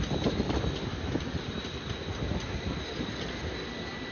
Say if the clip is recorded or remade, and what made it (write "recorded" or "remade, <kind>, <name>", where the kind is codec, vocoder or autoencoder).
recorded